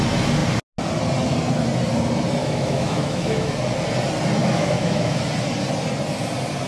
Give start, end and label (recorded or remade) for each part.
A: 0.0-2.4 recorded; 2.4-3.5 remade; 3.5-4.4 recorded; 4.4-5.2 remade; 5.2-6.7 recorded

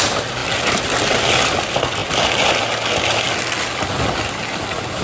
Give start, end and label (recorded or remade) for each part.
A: 0.0-5.0 recorded

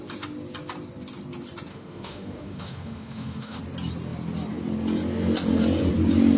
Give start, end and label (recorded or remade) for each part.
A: 0.0-1.7 recorded; 1.7-3.6 remade; 3.6-6.4 recorded

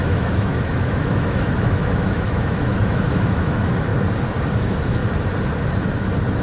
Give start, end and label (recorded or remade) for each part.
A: 0.0-3.9 remade; 3.9-4.6 recorded; 4.6-5.0 remade; 5.0-6.4 recorded